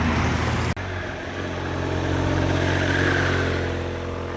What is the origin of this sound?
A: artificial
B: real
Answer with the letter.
B